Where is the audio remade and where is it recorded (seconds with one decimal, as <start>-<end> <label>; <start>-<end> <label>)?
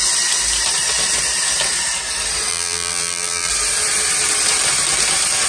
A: 0.0-2.5 recorded; 2.5-3.5 remade; 3.5-5.5 recorded